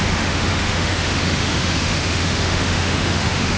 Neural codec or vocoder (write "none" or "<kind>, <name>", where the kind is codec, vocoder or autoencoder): autoencoder, DAC-VAE